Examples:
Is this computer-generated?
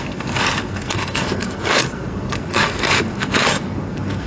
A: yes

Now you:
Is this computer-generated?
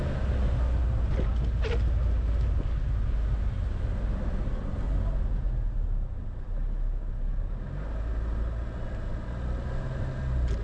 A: no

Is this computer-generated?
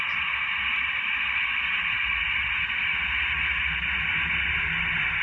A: no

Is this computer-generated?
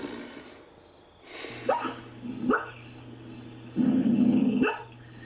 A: no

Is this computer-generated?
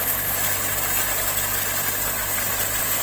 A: no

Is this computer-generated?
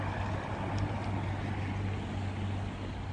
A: no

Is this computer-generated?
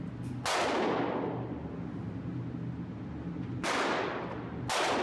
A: no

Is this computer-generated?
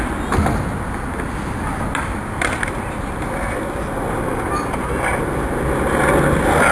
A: no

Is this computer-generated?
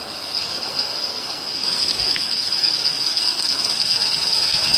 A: yes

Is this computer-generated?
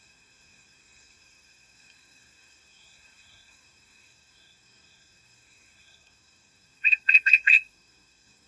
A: yes